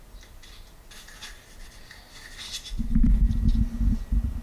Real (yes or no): yes